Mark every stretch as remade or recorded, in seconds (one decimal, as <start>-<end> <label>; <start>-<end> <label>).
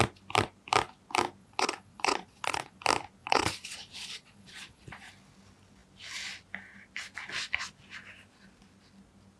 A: 0.0-1.4 recorded; 1.4-2.8 remade; 2.8-3.2 recorded; 3.2-5.1 remade; 5.1-9.4 recorded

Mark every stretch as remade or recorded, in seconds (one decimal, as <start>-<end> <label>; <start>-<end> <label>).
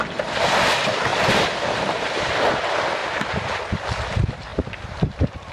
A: 0.0-1.1 recorded; 1.1-2.3 remade; 2.3-3.0 recorded; 3.0-3.6 remade; 3.6-5.5 recorded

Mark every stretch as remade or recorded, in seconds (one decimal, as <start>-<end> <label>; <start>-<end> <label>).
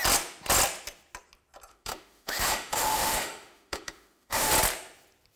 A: 0.0-1.7 recorded; 1.7-4.5 remade; 4.5-5.4 recorded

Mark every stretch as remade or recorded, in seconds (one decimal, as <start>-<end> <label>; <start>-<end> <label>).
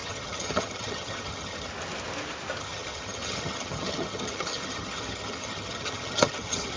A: 0.0-1.7 remade; 1.7-2.6 recorded; 2.6-6.8 remade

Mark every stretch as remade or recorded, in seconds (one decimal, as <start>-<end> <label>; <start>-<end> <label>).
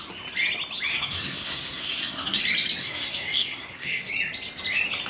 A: 0.0-0.9 recorded; 0.9-2.4 remade; 2.4-2.8 recorded; 2.8-4.1 remade; 4.1-5.1 recorded